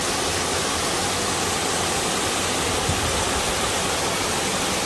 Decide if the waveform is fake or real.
real